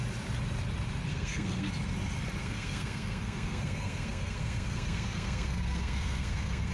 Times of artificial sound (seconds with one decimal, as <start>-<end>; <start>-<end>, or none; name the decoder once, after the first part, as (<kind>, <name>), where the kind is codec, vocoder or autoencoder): 1.1-1.7 (codec, SNAC); 2.4-6.7